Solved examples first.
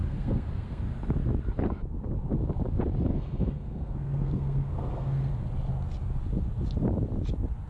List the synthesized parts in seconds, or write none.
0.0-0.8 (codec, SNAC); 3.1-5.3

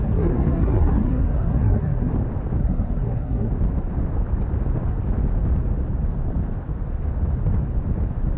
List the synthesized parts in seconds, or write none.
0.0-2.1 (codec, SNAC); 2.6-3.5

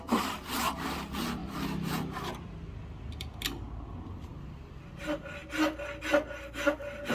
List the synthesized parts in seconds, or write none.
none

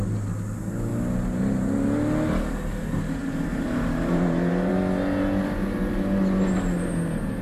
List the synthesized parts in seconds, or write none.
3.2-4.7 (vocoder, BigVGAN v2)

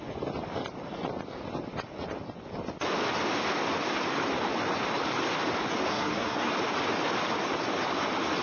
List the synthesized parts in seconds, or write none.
5.9-6.5 (codec, SNAC)

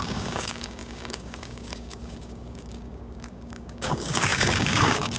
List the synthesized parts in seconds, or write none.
0.0-5.2 (codec, DAC)